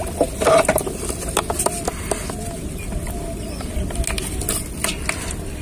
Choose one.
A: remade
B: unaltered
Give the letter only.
B